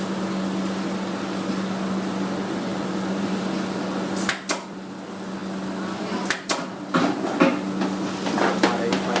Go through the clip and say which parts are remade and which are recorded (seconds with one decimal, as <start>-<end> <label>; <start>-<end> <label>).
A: 0.0-2.7 recorded; 2.7-3.4 remade; 3.4-9.2 recorded

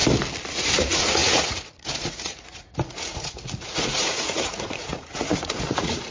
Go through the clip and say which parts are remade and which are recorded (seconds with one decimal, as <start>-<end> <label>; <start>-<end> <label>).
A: 0.0-0.5 recorded; 0.5-6.1 remade

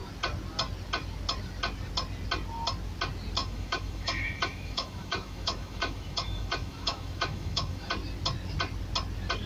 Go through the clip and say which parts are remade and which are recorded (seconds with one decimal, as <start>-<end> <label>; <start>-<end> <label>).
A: 0.0-3.4 recorded; 3.4-7.9 remade; 7.9-9.5 recorded

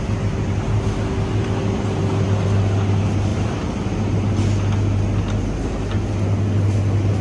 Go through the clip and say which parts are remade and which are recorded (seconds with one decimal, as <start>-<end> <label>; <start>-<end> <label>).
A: 0.0-7.2 recorded

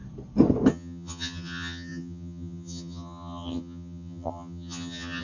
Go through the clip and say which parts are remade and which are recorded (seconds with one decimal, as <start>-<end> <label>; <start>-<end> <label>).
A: 0.0-0.7 recorded; 0.7-5.2 remade

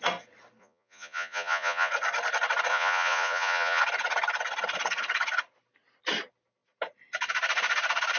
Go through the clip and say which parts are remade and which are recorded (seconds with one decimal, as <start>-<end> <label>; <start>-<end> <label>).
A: 0.0-0.6 recorded; 0.6-1.9 remade; 1.9-2.7 recorded; 2.7-3.8 remade; 3.8-8.2 recorded

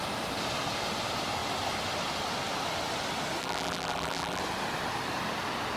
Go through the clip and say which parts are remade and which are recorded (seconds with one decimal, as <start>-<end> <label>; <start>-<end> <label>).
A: 0.0-3.4 recorded; 3.4-4.4 remade; 4.4-5.8 recorded

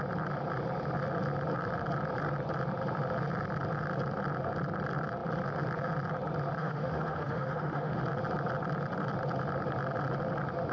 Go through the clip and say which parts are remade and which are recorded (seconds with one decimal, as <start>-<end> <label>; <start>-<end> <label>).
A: 0.0-6.6 recorded; 6.6-8.0 remade; 8.0-10.7 recorded